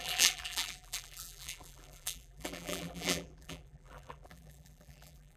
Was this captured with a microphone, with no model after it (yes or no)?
no